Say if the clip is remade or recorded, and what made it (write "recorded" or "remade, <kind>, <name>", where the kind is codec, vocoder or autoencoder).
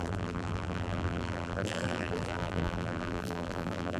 remade, vocoder, BigVGAN v2